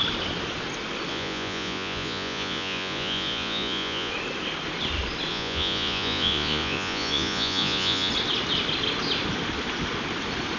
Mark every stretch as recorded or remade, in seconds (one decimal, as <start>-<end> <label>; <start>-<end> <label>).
0.0-1.1 recorded; 1.1-4.1 remade; 4.1-5.3 recorded; 5.3-8.1 remade; 8.1-10.6 recorded